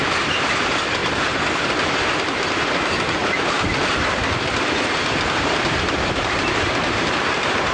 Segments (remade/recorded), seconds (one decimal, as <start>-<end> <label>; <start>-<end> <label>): 0.0-1.0 remade; 1.0-2.7 recorded; 2.7-3.2 remade; 3.2-5.5 recorded; 5.5-7.7 remade

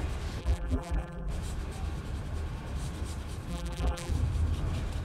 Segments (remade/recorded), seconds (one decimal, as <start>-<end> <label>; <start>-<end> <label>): 0.0-0.4 recorded; 0.4-1.3 remade; 1.3-3.5 recorded; 3.5-4.1 remade; 4.1-5.0 recorded

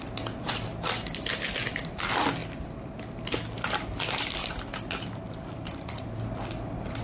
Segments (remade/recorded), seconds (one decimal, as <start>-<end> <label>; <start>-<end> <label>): 0.0-2.4 recorded; 2.4-3.0 remade; 3.0-4.4 recorded; 4.4-6.5 remade; 6.5-7.0 recorded

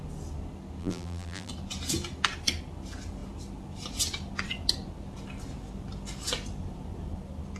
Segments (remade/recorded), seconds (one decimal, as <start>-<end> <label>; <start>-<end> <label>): 0.0-0.8 recorded; 0.8-1.5 remade; 1.5-7.6 recorded

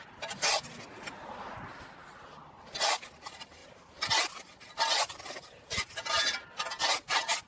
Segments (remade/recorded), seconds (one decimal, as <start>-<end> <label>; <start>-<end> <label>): 0.0-7.5 recorded

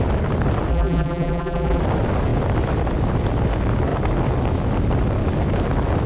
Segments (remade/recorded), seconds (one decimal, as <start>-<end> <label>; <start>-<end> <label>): 0.0-0.7 recorded; 0.7-1.8 remade; 1.8-6.1 recorded

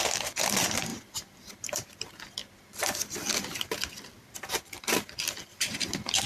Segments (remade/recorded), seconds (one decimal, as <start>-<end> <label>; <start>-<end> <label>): 0.0-0.9 recorded; 0.9-2.0 remade; 2.0-6.3 recorded